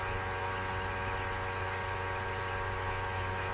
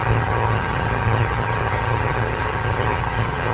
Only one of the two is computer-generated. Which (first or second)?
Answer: second